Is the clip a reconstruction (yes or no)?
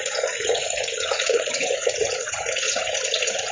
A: yes